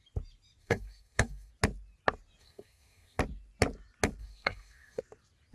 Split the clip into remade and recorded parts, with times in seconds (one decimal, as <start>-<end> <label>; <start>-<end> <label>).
0.0-0.6 recorded; 0.6-1.5 remade; 1.5-2.4 recorded; 2.4-3.2 remade; 3.2-4.2 recorded; 4.2-5.0 remade; 5.0-5.5 recorded